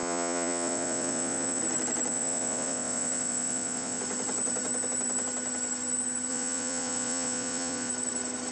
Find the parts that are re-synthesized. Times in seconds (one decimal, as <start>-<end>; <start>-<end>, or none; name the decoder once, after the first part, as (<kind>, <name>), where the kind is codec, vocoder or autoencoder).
0.0-1.6 (vocoder, Vocos); 2.1-4.0; 6.3-7.9